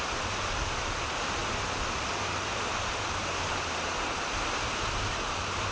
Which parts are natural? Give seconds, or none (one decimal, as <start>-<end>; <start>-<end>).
0.0-5.7